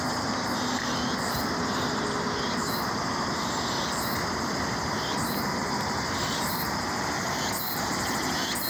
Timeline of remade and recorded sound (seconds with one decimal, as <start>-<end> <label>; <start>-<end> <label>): 0.0-5.6 recorded; 5.6-7.4 remade; 7.4-8.7 recorded